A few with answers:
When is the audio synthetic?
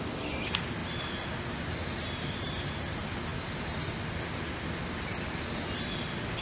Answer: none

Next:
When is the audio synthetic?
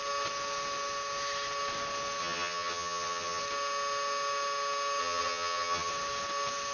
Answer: 2.2-3.4 (vocoder, HiFi-GAN); 5.0-5.9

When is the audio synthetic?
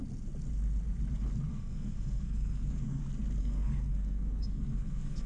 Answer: 1.5-3.0 (codec, SNAC); 3.4-5.3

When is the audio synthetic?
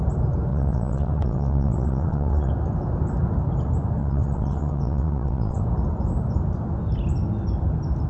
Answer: 0.5-2.5 (vocoder, WaveNeXt); 4.0-5.6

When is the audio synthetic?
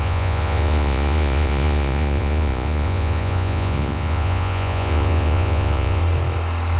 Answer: 0.0-6.0 (vocoder, Vocos)